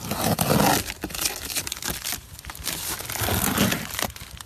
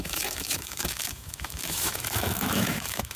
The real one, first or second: first